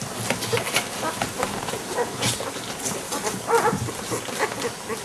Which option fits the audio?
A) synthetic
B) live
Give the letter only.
B